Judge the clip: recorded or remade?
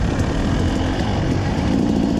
remade